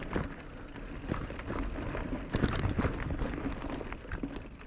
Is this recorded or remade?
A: recorded